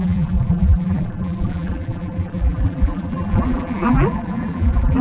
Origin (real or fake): fake